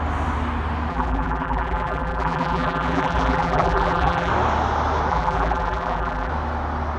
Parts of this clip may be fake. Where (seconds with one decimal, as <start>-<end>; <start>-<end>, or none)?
0.9-4.3; 5.1-6.3